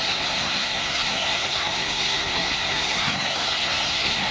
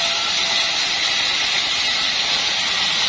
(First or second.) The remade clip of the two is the first